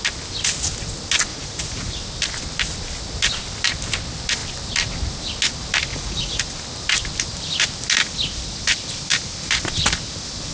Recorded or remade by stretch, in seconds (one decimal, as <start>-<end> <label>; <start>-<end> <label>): 0.0-1.3 recorded; 1.3-1.9 remade; 1.9-5.9 recorded; 5.9-6.4 remade; 6.4-10.5 recorded